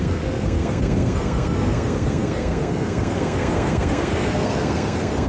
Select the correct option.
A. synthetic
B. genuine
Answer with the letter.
A